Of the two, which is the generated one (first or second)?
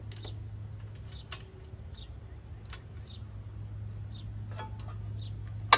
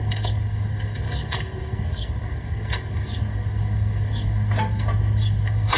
second